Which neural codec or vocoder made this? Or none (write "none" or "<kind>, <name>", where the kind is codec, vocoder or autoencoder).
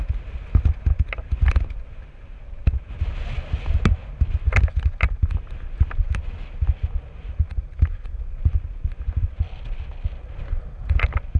none